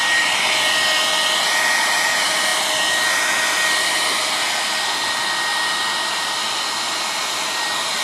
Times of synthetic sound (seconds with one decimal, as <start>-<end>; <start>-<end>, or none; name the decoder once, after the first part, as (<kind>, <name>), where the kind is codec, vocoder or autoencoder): none